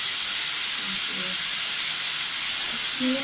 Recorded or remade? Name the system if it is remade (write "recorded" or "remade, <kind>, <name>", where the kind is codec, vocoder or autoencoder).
recorded